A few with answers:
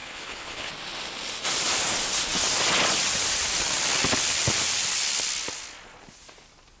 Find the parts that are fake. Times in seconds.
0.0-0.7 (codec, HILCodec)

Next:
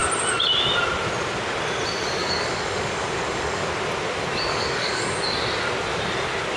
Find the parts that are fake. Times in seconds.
2.2-3.7 (codec, DAC); 4.5-5.2

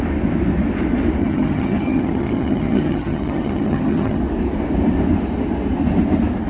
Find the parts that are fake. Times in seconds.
1.2-4.2 (vocoder, HiFi-GAN)

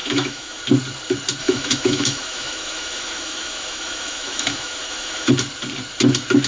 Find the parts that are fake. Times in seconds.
0.0-0.6 (autoencoder, DAC-VAE); 1.4-5.3

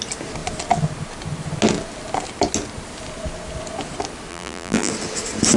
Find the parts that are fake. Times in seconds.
4.3-4.9 (vocoder, BigVGAN v2)

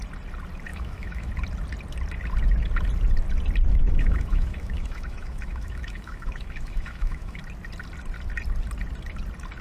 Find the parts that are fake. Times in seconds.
0.7-1.3 (autoencoder, DAC-VAE); 3.8-7.4

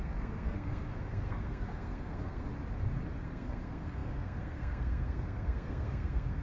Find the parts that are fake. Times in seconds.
0.0-2.5 (codec, SNAC); 3.2-6.4